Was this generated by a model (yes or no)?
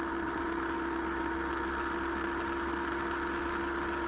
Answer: no